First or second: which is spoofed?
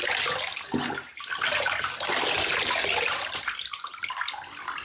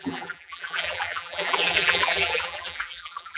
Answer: second